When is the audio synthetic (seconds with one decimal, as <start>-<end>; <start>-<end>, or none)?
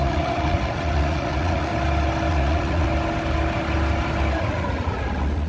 0.0-1.7; 2.3-2.9; 4.4-5.5